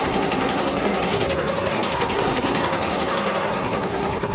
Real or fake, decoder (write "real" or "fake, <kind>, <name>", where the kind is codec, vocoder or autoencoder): fake, codec, SNAC